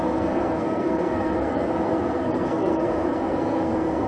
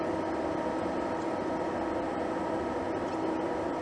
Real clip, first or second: second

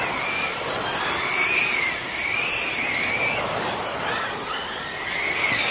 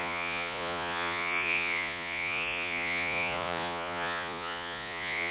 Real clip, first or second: first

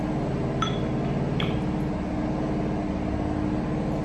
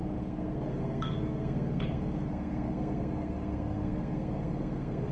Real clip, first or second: first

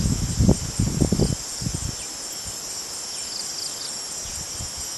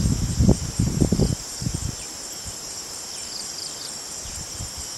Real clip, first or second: first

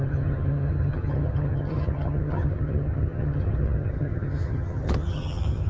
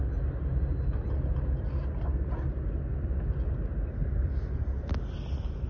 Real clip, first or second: second